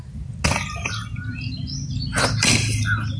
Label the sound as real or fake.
real